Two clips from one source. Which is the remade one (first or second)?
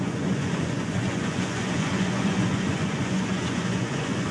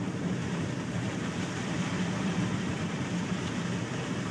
first